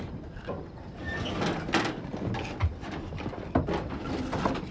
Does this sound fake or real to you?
real